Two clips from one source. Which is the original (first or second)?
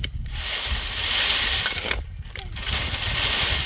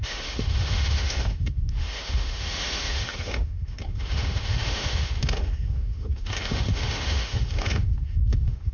first